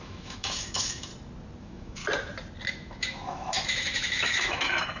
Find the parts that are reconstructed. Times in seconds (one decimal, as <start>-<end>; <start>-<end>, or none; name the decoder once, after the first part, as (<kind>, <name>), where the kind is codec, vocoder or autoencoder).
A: 0.0-1.1 (autoencoder, DAC-VAE); 1.6-2.0; 2.7-5.0